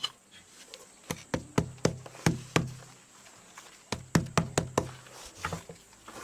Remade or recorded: recorded